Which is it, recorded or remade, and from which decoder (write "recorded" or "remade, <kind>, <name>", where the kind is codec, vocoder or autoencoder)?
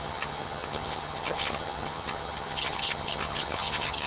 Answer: remade, vocoder, HiFi-GAN